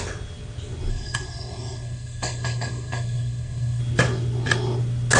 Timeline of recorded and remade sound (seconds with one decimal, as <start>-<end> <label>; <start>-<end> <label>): 0.0-0.9 recorded; 0.9-3.8 remade; 3.8-5.2 recorded